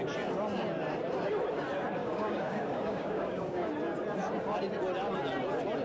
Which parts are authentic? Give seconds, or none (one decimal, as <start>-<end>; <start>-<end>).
0.0-2.0; 3.7-5.8